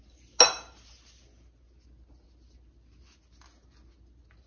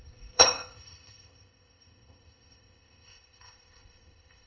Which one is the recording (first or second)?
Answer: first